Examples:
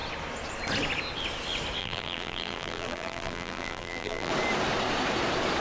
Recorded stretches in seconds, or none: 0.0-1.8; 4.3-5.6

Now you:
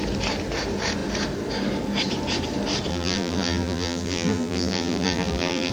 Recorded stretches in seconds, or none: 0.0-2.9

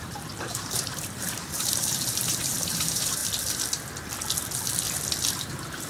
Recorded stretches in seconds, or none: 3.2-5.3

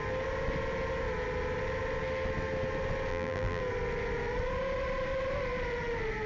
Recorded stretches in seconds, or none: 0.0-3.1; 3.6-6.3